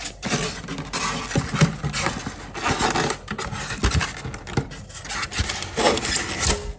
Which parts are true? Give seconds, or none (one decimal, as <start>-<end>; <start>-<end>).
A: 0.0-6.8